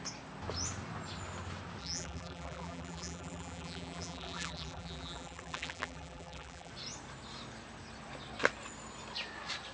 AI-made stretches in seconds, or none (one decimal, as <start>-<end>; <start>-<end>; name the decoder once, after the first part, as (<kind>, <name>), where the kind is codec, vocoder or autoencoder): 1.8-6.7 (vocoder, BigVGAN v2)